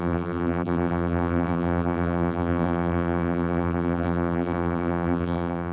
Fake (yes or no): yes